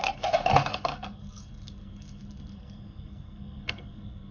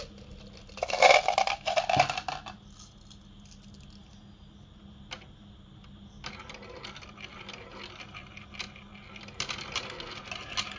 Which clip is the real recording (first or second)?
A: second